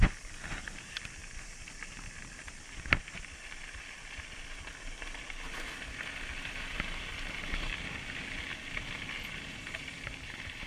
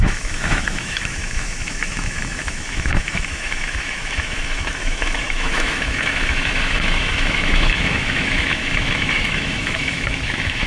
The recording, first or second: first